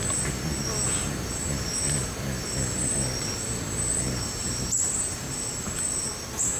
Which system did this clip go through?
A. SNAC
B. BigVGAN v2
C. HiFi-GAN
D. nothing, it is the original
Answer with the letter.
B